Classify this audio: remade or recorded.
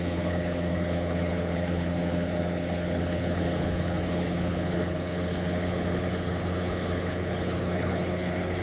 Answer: remade